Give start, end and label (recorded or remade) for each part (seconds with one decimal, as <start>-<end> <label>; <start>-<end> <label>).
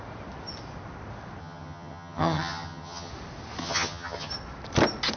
0.0-1.4 recorded; 1.4-3.1 remade; 3.1-3.6 recorded; 3.6-4.3 remade; 4.3-5.2 recorded